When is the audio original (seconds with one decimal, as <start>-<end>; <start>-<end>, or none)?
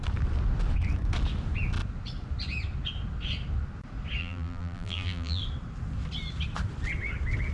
0.0-4.2; 5.4-7.5